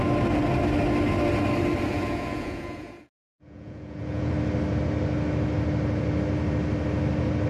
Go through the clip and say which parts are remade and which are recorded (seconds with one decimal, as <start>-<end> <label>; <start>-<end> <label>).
0.0-1.9 recorded; 1.9-4.3 remade; 4.3-7.5 recorded